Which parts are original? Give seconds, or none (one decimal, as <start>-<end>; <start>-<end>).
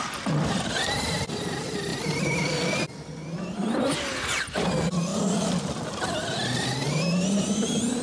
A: 0.0-1.9; 2.7-5.1; 6.1-8.0